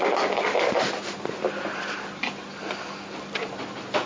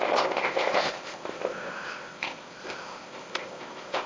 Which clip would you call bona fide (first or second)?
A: first